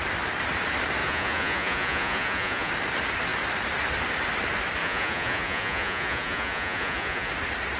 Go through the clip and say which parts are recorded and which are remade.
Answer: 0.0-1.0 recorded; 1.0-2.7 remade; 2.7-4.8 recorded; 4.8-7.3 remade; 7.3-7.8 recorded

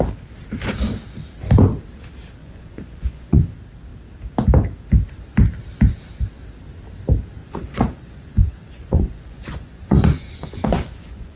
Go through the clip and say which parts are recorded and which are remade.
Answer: 0.0-2.4 recorded; 2.4-3.5 remade; 3.5-7.4 recorded; 7.4-11.4 remade

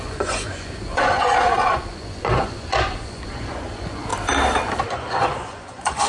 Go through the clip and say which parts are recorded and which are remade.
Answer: 0.0-4.1 remade; 4.1-4.9 recorded; 4.9-6.1 remade

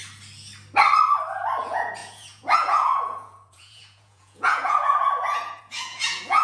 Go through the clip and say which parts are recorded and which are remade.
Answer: 0.0-1.6 recorded; 1.6-6.4 remade